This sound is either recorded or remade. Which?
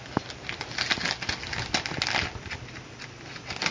recorded